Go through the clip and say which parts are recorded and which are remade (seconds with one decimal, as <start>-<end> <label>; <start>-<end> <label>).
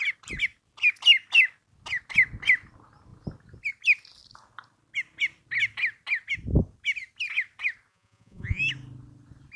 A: 0.0-7.9 recorded; 7.9-8.6 remade; 8.6-9.6 recorded